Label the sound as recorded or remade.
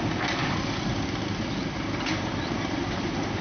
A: recorded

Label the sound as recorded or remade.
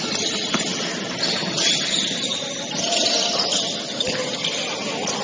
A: recorded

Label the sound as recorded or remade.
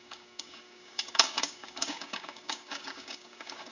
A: remade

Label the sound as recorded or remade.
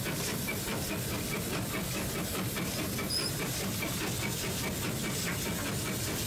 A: recorded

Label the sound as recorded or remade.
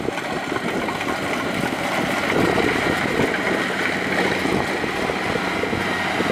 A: recorded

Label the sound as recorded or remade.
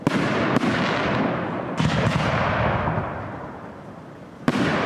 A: recorded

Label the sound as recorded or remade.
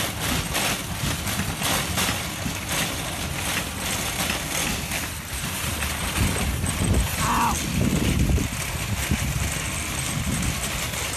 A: recorded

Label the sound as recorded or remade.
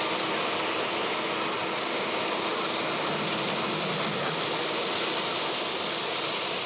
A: recorded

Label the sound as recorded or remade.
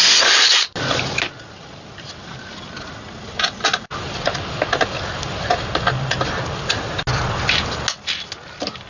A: recorded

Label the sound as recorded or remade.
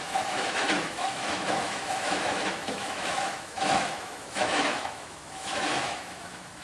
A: remade